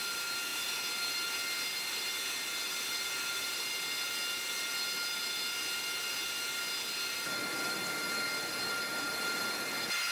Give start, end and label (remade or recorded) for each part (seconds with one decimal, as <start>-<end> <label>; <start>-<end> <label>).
0.0-10.1 recorded